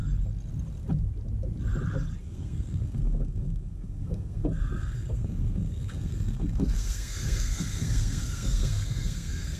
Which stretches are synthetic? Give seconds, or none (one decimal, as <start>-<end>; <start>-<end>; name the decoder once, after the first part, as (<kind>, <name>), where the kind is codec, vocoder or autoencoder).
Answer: 2.2-9.6 (codec, SNAC)